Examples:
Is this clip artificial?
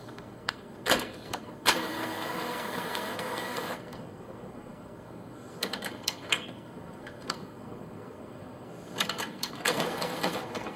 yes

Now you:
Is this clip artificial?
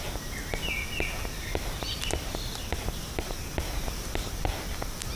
no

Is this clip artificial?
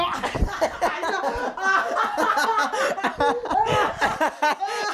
no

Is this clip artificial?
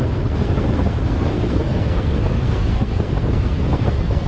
yes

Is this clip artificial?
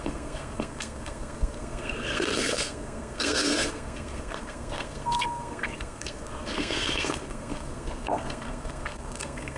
yes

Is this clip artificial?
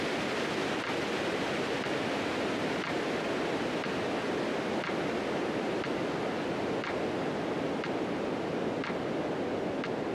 no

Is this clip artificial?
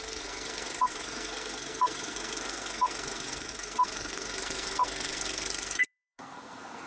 yes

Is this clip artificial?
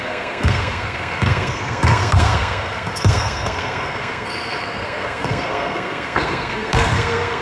yes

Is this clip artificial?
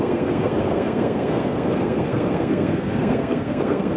yes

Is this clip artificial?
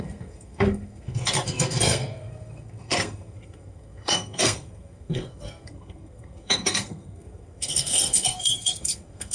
yes